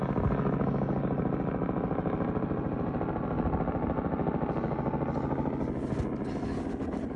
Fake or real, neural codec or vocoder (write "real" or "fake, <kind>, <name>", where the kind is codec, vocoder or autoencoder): real